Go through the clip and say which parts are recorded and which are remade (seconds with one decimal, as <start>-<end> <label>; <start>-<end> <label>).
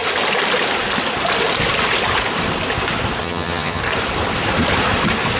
0.0-3.2 recorded; 3.2-3.8 remade; 3.8-5.4 recorded